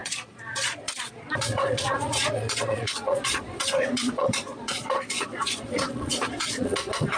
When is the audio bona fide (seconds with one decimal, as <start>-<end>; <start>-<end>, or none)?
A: none